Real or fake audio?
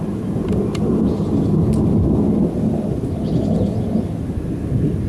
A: real